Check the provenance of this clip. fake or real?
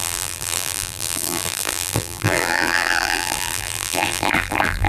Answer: fake